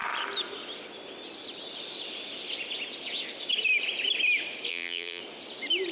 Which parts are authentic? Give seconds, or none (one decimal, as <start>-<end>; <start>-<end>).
0.0-4.7; 5.2-5.9